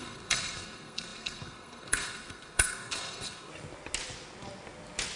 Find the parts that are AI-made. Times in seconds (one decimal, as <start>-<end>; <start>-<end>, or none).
0.0-3.5